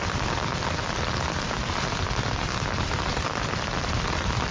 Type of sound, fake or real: real